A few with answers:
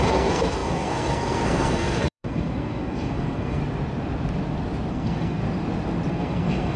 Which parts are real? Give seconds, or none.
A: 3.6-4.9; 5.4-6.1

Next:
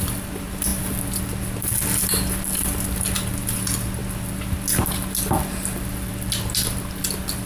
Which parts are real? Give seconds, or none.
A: 0.0-7.5

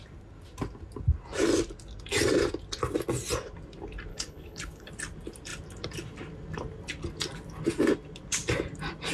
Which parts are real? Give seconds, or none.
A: 0.0-4.1; 4.9-9.1